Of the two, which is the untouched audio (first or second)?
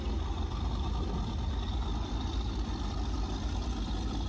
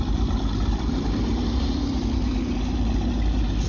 first